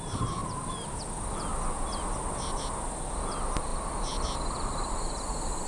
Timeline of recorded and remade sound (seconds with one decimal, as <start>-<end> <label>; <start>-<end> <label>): 0.0-5.7 recorded